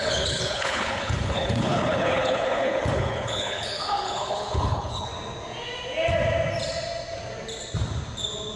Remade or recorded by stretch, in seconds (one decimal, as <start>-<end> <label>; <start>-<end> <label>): 0.0-5.1 remade; 5.1-8.6 recorded